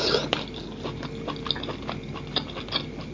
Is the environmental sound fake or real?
real